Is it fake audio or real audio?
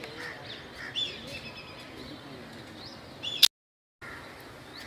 real